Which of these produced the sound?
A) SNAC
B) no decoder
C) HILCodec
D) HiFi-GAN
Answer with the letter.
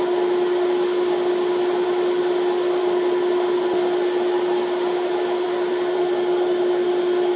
B